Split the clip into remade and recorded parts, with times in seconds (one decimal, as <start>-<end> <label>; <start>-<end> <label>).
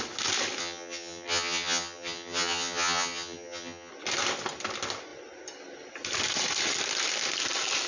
0.0-0.6 recorded; 0.6-3.9 remade; 3.9-7.9 recorded